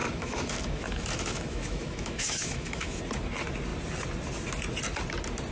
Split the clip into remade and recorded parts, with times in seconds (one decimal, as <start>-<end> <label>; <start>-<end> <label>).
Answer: 0.0-3.0 remade; 3.0-5.5 recorded